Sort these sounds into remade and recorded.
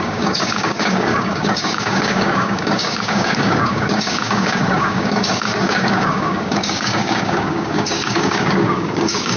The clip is remade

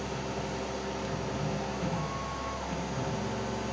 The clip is recorded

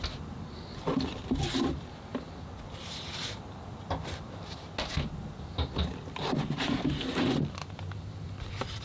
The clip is recorded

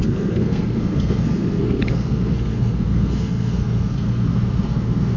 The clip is remade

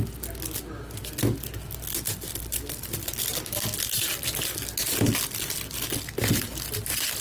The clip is recorded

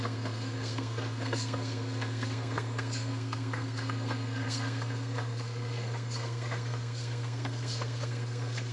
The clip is remade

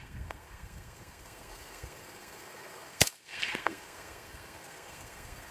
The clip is remade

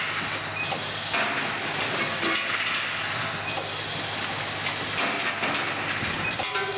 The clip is recorded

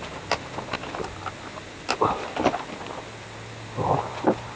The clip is recorded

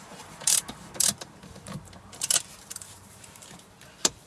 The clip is remade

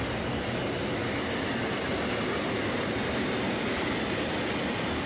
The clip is recorded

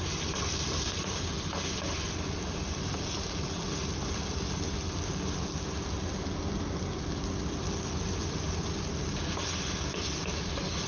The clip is recorded